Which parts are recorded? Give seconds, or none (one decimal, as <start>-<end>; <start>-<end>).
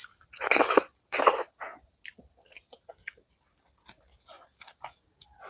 1.2-5.5